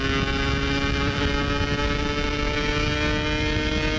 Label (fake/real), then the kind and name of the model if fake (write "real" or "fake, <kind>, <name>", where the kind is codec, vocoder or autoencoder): real